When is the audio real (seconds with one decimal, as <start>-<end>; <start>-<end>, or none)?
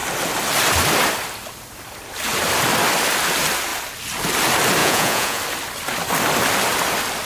0.0-4.8; 5.4-7.3